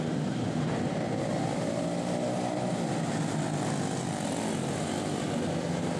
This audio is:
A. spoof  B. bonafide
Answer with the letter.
B